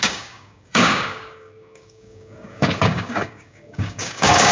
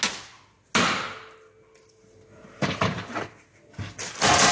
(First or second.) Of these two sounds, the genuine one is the second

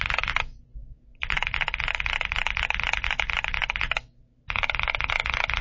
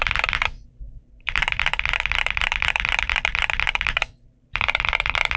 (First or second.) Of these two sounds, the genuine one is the first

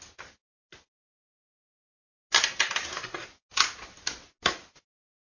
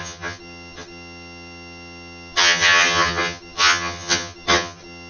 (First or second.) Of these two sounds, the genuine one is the first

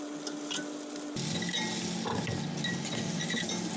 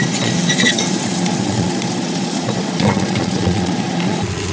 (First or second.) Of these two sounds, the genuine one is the first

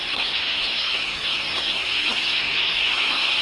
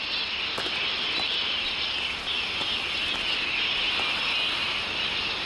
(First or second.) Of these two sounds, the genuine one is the second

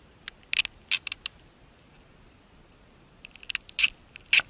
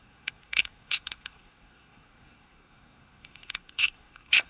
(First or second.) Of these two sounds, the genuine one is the first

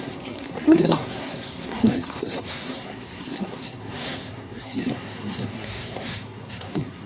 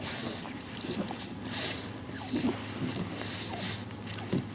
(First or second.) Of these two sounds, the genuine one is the second